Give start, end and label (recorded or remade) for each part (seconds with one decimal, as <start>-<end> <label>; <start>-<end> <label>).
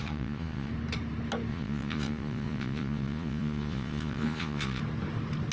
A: 0.0-0.7 remade; 0.7-1.5 recorded; 1.5-4.8 remade; 4.8-5.5 recorded